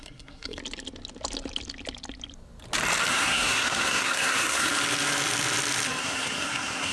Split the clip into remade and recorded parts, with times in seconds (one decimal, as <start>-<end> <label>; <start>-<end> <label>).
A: 0.0-0.6 remade; 0.6-3.1 recorded; 3.1-4.7 remade; 4.7-6.0 recorded; 6.0-6.9 remade

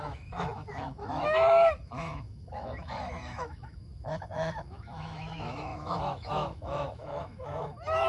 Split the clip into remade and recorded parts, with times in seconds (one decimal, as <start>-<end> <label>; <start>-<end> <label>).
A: 0.0-8.1 remade

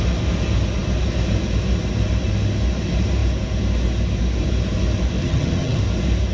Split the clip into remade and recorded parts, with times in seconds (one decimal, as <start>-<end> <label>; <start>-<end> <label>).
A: 0.0-5.2 recorded; 5.2-5.8 remade; 5.8-6.3 recorded

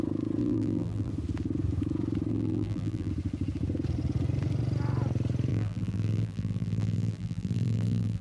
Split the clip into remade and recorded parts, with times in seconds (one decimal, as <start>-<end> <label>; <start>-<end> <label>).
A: 0.0-0.4 recorded; 0.4-1.1 remade; 1.1-2.3 recorded; 2.3-3.1 remade; 3.1-5.5 recorded; 5.5-8.2 remade

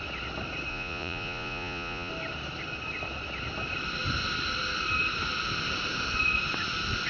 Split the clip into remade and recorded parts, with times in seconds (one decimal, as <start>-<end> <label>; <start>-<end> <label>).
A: 0.0-0.7 recorded; 0.7-2.1 remade; 2.1-7.1 recorded